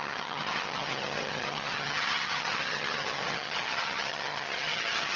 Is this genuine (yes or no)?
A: no